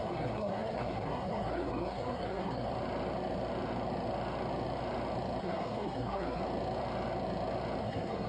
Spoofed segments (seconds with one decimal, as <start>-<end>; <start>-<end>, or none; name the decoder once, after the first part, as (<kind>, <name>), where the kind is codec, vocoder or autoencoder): 0.0-2.7 (codec, SNAC); 5.4-6.4; 7.8-8.3